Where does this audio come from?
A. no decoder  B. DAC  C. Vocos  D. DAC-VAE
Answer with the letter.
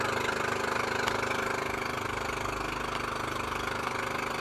A